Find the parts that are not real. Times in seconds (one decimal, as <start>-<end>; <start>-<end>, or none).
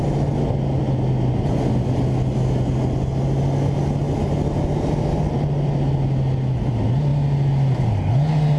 none